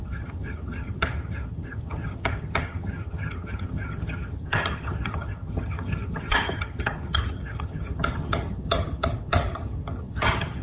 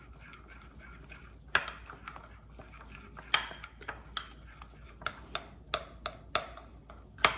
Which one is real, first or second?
second